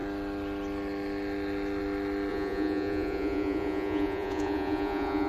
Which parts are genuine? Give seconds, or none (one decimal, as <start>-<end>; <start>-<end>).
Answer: 0.0-2.3